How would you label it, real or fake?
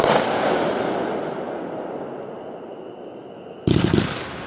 real